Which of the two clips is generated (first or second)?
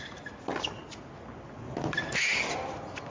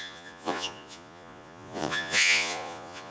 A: second